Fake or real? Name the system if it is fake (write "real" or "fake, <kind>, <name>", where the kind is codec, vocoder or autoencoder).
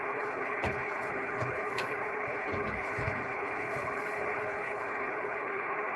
fake, codec, HILCodec